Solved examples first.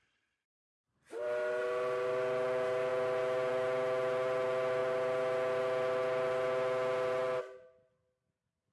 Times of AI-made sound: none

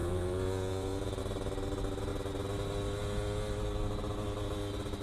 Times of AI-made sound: 0.0-1.2 (vocoder, Vocos)

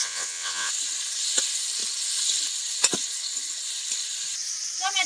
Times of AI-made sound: 0.0-0.7 (vocoder, WaveNeXt)

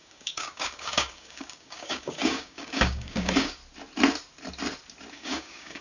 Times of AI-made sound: 0.0-3.6 (codec, DAC); 5.1-5.8

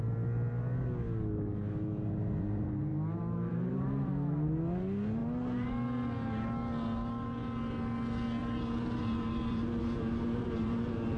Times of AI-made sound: 2.9-4.1 (vocoder, BigVGAN v2); 8.4-11.2

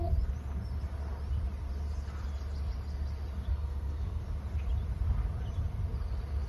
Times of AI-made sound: 3.5-4.2 (codec, SNAC)